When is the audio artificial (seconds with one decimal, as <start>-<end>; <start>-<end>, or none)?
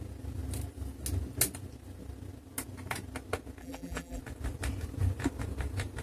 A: 3.6-4.2